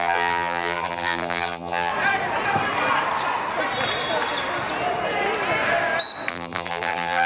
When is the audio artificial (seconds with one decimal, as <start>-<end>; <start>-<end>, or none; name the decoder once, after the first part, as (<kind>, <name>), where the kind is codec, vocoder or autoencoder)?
0.0-1.9 (vocoder, BigVGAN v2); 6.3-7.3